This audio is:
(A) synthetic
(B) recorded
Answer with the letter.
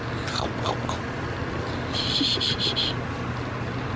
B